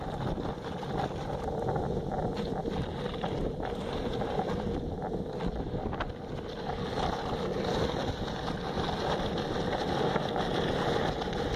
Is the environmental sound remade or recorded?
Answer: recorded